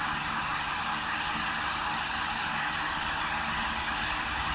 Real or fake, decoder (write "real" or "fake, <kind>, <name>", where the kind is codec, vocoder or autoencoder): real